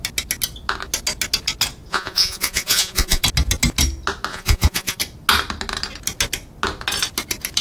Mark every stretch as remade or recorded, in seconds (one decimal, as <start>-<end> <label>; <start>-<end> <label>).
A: 0.0-1.9 recorded; 1.9-3.2 remade; 3.2-4.3 recorded; 4.3-5.0 remade; 5.0-7.6 recorded